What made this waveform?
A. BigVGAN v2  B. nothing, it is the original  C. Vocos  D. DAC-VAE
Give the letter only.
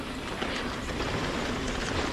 B